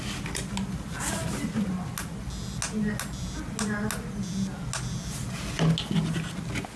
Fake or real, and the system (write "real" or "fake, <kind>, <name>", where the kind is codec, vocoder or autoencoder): real